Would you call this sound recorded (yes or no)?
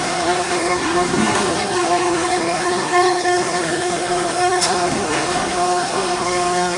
no